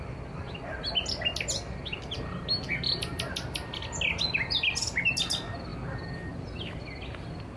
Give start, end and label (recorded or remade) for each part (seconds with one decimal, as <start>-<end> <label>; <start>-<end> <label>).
0.0-7.6 recorded